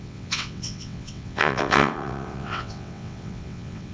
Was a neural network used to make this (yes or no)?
yes